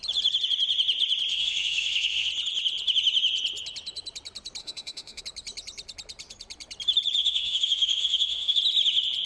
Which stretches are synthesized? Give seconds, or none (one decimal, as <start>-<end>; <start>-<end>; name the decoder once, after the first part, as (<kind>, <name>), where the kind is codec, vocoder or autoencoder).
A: 1.3-2.3 (autoencoder, DAC-VAE); 4.6-5.2; 7.2-8.6